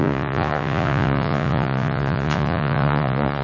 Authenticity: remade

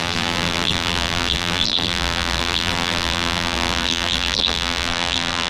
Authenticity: remade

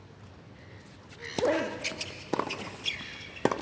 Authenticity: recorded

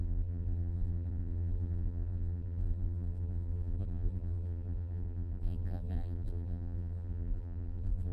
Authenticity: remade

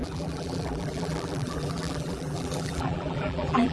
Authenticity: remade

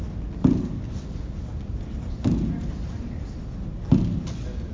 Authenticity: recorded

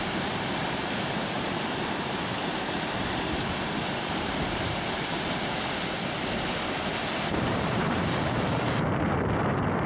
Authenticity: remade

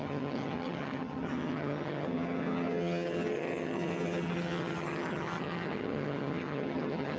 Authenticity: remade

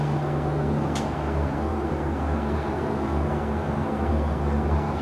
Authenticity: remade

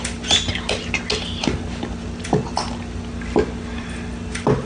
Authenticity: recorded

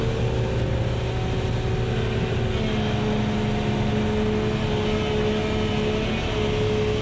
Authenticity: recorded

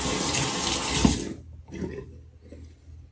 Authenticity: recorded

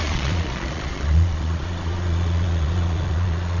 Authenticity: remade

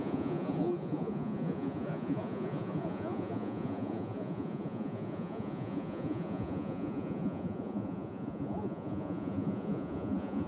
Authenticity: remade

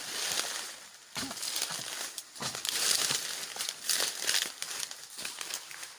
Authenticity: recorded